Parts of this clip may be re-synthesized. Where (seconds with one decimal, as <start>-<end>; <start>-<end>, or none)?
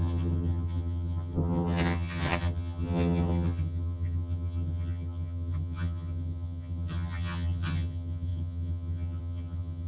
0.0-9.9